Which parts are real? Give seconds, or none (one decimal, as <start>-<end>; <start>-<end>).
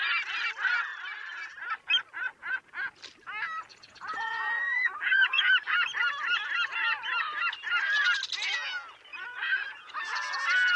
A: 0.0-3.7; 5.5-9.1; 9.9-10.8